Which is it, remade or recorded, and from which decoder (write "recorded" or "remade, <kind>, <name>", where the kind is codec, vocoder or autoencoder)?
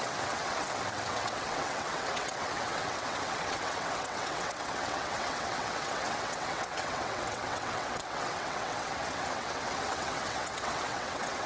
remade, vocoder, WaveNeXt